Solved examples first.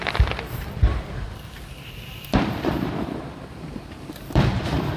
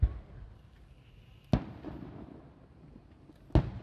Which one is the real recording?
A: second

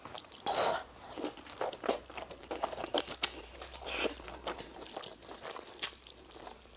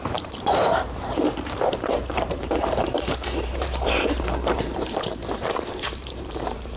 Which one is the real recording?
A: first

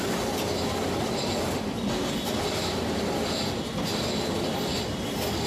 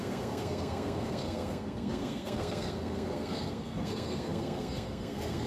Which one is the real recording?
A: first